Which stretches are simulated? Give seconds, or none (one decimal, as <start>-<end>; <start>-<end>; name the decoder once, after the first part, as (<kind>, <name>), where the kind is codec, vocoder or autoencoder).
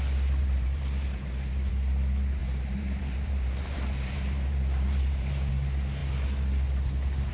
0.4-1.7 (vocoder, BigVGAN v2); 2.4-5.5